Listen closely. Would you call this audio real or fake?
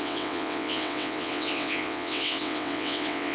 fake